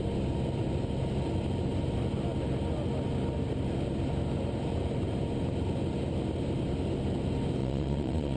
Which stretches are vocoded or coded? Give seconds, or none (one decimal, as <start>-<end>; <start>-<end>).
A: 7.6-8.4